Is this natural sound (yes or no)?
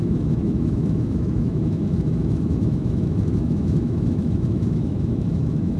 no